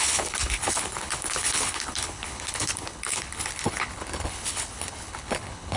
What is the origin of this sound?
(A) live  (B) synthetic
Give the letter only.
B